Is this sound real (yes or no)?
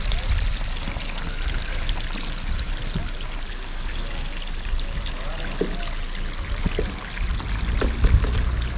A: yes